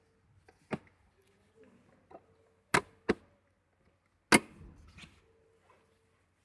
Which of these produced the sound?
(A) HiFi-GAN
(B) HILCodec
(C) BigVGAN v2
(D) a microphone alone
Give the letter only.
D